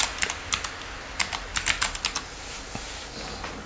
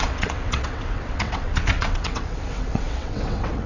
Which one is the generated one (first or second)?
second